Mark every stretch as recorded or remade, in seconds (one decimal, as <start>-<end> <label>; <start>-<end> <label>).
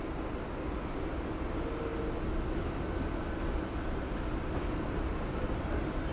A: 0.0-6.1 recorded